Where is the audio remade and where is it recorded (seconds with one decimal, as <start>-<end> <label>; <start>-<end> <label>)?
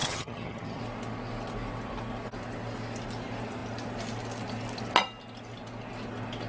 0.0-0.8 remade; 0.8-6.5 recorded